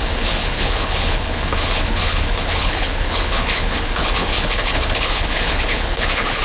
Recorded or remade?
remade